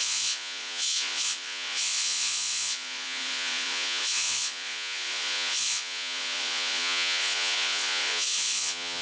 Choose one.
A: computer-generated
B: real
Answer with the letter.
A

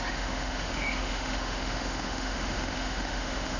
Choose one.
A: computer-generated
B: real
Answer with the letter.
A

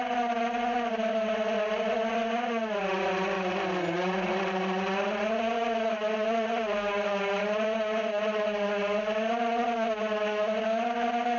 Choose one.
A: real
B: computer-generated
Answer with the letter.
A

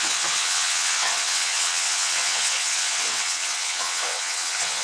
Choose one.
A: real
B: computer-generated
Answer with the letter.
B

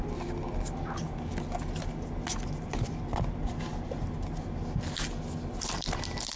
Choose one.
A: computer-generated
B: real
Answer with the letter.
B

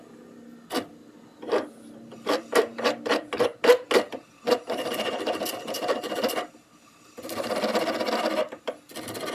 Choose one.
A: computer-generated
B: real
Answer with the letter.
B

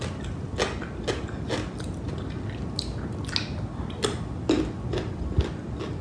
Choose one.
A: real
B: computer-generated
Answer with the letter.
A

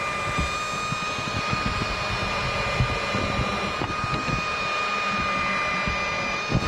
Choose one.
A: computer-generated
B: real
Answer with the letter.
B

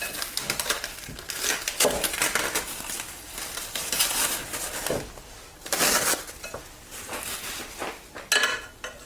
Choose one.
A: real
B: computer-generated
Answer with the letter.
A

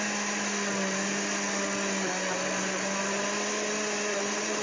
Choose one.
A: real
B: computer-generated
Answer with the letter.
A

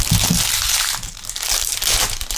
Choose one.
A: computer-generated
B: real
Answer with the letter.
B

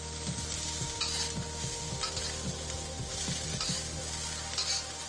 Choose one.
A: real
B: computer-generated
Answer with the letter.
A